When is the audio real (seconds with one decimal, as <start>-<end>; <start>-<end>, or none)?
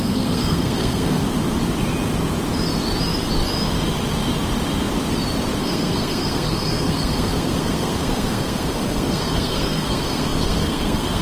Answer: 1.2-5.6